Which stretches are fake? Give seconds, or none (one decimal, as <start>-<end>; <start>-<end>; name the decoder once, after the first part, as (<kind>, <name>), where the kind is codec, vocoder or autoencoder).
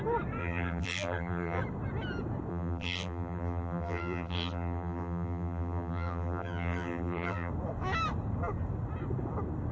0.4-1.6 (vocoder, BigVGAN v2); 2.5-7.5